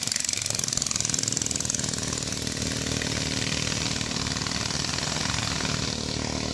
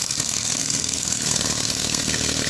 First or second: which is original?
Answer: first